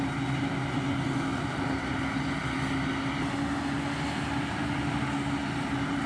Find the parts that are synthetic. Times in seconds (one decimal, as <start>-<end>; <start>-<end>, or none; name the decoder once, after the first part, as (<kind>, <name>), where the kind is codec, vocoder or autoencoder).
none